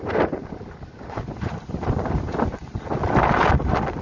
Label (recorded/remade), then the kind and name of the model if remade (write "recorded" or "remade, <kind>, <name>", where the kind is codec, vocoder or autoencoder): recorded